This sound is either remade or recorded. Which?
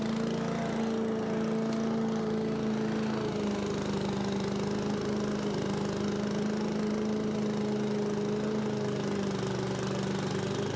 recorded